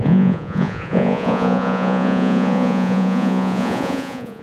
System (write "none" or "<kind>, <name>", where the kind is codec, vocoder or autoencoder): vocoder, Vocos